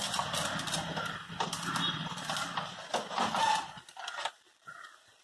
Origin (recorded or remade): recorded